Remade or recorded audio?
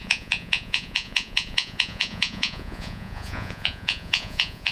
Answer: remade